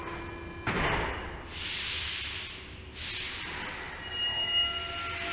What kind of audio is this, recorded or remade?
recorded